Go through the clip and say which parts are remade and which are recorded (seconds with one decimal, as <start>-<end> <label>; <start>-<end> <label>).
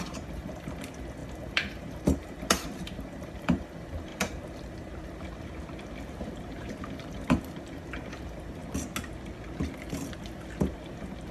0.0-8.6 remade; 8.6-10.7 recorded; 10.7-11.3 remade